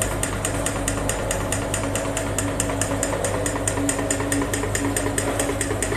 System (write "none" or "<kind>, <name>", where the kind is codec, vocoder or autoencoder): none